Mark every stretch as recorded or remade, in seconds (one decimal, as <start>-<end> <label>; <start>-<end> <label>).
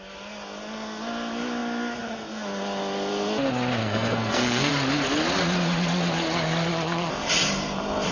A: 0.0-3.8 recorded; 3.8-4.7 remade; 4.7-8.1 recorded